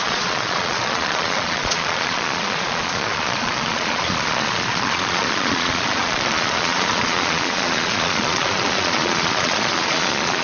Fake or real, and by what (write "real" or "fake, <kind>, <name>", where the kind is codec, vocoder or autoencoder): fake, vocoder, Vocos